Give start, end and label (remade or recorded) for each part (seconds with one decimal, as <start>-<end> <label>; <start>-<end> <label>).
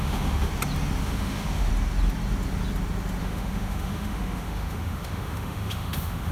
0.0-0.5 remade; 0.5-1.0 recorded; 1.0-1.7 remade; 1.7-3.2 recorded; 3.2-6.3 remade